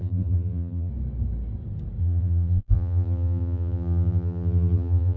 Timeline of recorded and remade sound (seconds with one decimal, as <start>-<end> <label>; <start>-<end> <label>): 0.0-0.9 remade; 0.9-2.0 recorded; 2.0-5.2 remade